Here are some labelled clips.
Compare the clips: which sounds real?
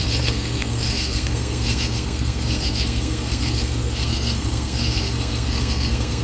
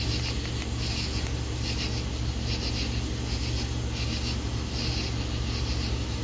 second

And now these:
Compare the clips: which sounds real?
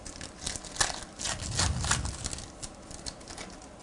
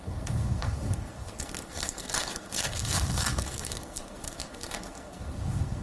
first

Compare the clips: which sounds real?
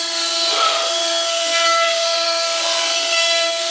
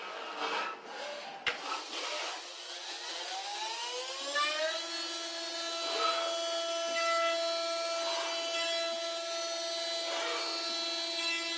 second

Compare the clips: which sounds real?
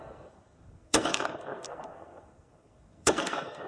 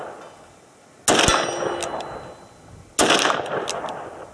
second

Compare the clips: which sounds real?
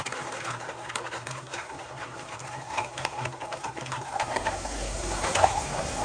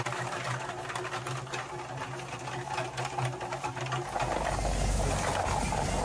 second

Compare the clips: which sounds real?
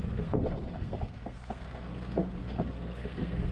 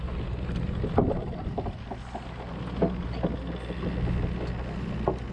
second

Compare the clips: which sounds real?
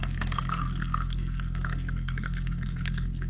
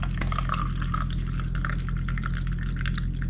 second